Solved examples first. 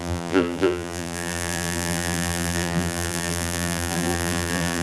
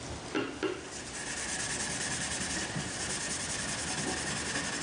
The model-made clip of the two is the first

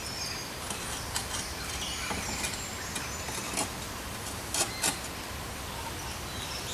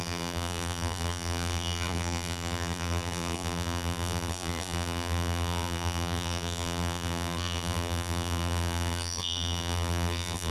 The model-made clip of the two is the second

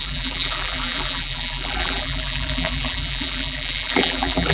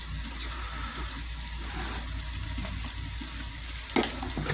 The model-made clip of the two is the first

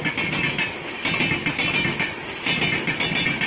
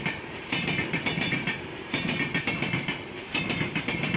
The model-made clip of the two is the second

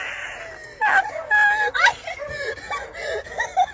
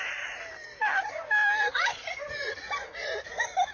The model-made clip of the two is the second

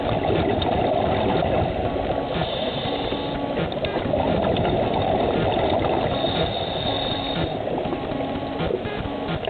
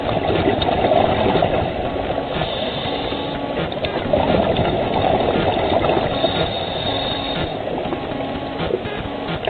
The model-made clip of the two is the second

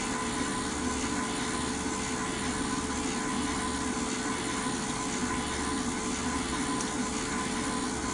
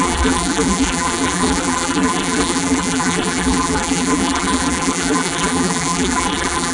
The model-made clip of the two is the second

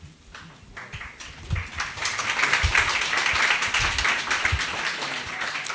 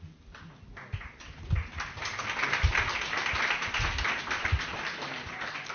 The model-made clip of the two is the first